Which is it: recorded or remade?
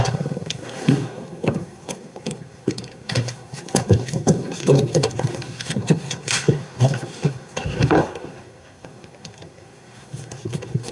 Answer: remade